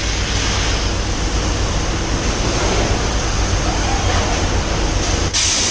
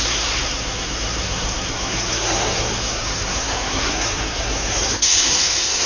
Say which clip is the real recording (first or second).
first